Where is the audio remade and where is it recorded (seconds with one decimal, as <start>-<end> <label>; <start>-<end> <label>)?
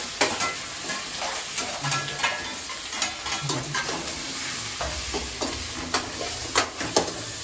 0.0-7.4 recorded